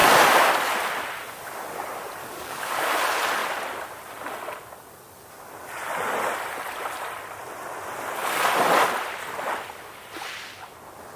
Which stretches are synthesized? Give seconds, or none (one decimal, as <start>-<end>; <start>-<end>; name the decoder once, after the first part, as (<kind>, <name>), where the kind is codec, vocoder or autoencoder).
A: 2.2-2.7 (codec, DAC)